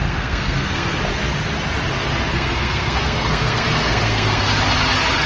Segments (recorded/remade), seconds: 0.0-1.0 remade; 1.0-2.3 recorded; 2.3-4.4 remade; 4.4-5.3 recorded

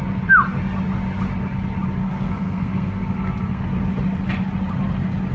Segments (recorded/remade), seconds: 0.0-2.0 recorded; 2.0-3.6 remade; 3.6-5.3 recorded